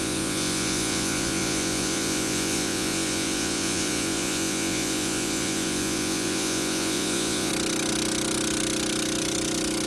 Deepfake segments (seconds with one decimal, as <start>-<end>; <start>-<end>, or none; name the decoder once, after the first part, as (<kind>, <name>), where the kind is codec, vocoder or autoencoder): 0.0-7.5 (vocoder, Vocos)